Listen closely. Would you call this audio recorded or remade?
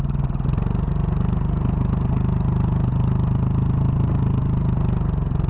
recorded